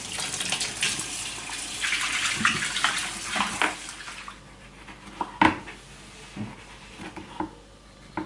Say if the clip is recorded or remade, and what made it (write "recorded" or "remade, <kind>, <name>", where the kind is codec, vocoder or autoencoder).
recorded